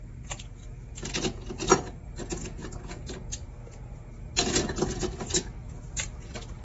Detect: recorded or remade recorded